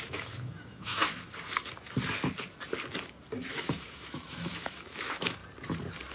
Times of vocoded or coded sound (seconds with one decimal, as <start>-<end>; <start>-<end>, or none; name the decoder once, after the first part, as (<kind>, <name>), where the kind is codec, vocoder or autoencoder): 0.0-1.0 (autoencoder, DAC-VAE); 3.5-5.4

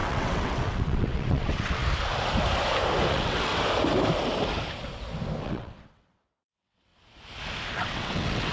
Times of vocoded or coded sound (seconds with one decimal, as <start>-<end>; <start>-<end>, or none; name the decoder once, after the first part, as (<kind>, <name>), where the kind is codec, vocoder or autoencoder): 0.0-1.8 (vocoder, WaveNeXt); 3.1-3.5; 5.4-6.9; 7.7-8.5

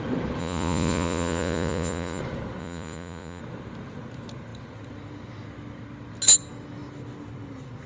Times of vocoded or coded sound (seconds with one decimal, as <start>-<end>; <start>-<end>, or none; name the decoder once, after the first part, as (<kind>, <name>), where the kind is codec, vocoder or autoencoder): 0.4-2.2 (vocoder, Vocos); 2.6-3.4